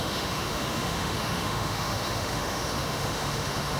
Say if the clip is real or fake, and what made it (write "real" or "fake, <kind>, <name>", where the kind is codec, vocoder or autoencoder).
fake, autoencoder, DAC-VAE